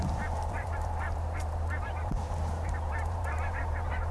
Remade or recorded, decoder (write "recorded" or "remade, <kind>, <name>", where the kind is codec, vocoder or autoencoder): remade, vocoder, BigVGAN v2